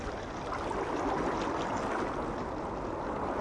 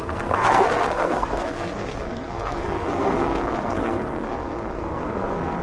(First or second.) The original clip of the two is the first